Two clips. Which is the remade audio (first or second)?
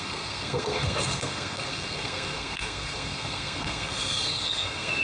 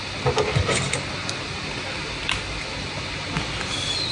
first